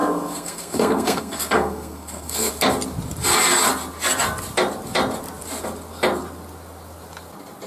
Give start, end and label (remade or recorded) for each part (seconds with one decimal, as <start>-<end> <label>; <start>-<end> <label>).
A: 0.0-2.5 remade; 2.5-7.7 recorded